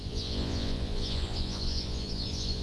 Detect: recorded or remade remade